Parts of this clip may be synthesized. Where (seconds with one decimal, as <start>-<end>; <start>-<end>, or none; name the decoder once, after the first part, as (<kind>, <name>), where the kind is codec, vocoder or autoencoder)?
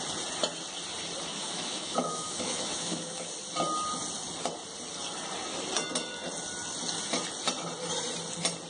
1.3-3.3 (autoencoder, DAC-VAE)